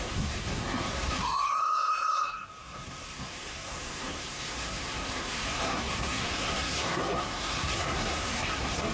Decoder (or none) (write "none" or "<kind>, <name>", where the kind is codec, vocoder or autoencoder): codec, SNAC